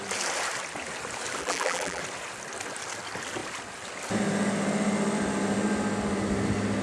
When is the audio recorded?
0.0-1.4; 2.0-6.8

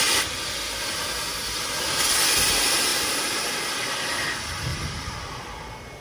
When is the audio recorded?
0.0-2.9; 3.5-4.7; 5.2-6.0

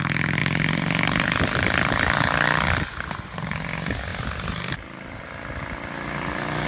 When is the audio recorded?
0.0-0.4; 1.9-4.1; 5.2-6.7

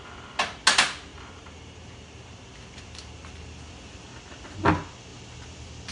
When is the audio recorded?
0.0-1.1; 3.7-5.9

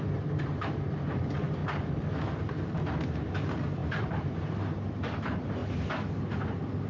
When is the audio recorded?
1.6-3.1; 5.6-6.9

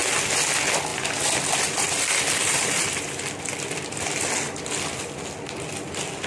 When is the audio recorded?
0.0-0.9; 3.5-6.3

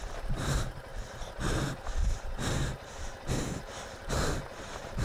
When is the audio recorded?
0.0-0.9; 1.4-2.0; 3.6-5.0